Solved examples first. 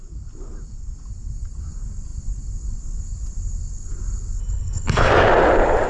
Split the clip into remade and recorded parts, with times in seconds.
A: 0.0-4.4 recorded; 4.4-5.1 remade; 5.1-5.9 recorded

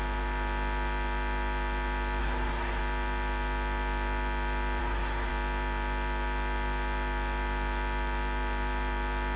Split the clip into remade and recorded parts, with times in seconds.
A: 0.0-2.2 recorded; 2.2-2.8 remade; 2.8-4.8 recorded; 4.8-5.3 remade; 5.3-9.4 recorded

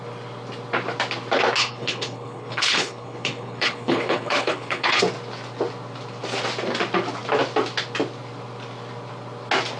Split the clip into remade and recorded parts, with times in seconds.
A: 0.0-1.6 recorded; 1.6-5.0 remade; 5.0-9.8 recorded

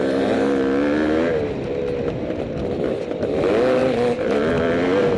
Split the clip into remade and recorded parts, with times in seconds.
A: 0.0-5.2 recorded

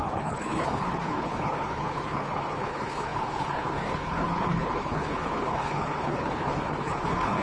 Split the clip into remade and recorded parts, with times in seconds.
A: 0.0-7.4 remade

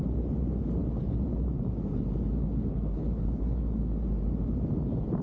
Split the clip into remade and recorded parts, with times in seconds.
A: 0.0-2.6 recorded; 2.6-3.8 remade; 3.8-5.2 recorded